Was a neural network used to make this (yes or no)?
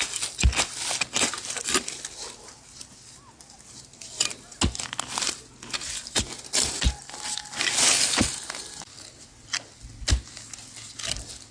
no